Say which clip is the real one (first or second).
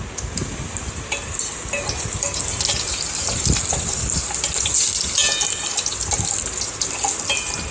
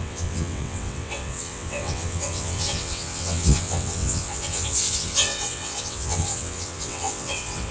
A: first